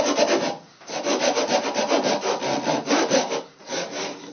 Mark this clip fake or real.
real